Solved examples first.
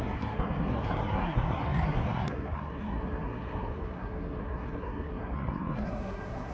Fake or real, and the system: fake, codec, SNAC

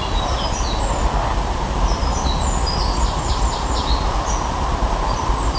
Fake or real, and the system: real